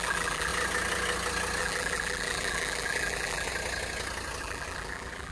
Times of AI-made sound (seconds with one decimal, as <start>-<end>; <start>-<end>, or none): 0.0-0.5; 1.6-3.5; 4.4-5.3